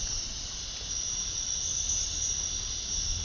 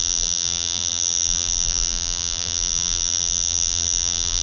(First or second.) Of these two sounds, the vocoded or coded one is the second